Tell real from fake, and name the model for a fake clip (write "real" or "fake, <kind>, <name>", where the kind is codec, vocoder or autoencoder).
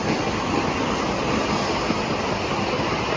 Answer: real